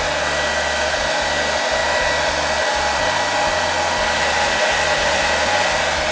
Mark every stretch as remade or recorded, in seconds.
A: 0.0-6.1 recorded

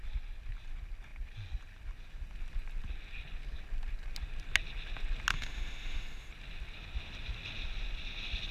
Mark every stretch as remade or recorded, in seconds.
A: 0.0-5.3 recorded; 5.3-6.3 remade; 6.3-8.5 recorded